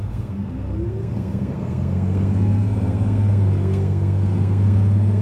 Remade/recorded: remade